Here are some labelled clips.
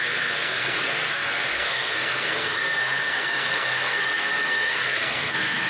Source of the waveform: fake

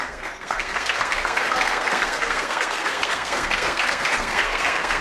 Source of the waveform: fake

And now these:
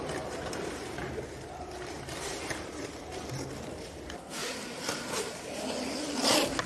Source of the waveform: real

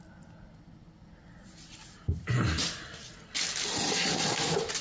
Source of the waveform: real